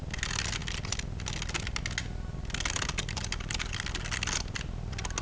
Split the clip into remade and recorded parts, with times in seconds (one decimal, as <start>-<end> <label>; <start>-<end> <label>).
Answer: 0.0-5.2 recorded